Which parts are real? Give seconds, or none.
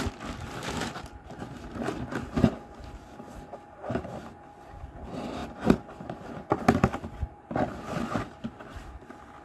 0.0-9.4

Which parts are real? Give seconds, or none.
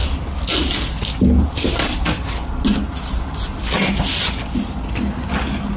0.0-5.8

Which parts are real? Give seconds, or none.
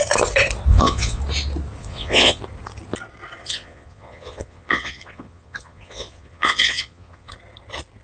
0.0-0.7; 1.2-1.8; 2.4-3.4; 7.3-8.0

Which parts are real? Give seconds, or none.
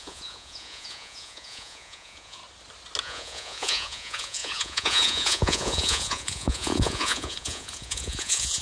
2.4-3.0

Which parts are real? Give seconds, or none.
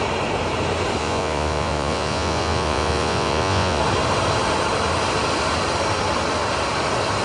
0.0-1.0; 3.8-7.2